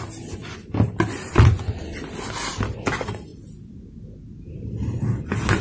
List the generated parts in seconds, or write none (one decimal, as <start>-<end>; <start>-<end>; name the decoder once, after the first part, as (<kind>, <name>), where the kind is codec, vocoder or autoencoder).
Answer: none